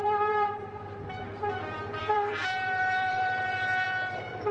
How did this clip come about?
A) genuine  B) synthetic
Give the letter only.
B